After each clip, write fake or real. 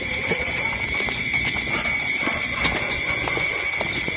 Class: fake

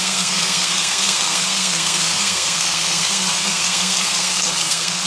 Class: fake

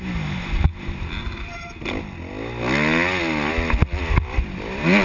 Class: real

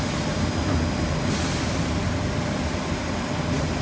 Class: real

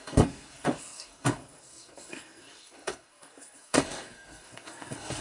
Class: fake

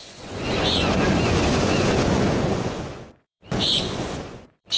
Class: fake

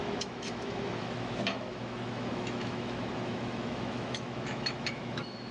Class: fake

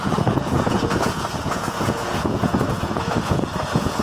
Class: fake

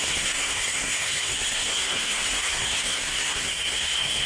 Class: fake